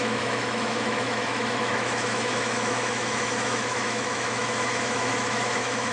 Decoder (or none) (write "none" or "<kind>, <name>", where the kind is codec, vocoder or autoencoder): autoencoder, DAC-VAE